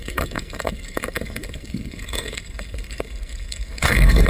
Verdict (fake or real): fake